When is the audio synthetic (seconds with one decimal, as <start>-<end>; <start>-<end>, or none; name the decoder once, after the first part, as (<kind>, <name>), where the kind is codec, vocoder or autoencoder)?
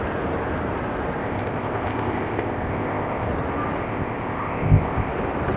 1.2-3.3 (codec, ZipCodec); 3.8-5.1